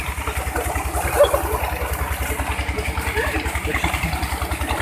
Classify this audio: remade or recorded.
recorded